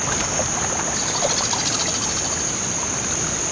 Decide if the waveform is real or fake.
real